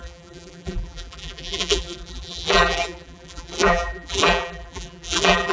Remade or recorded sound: remade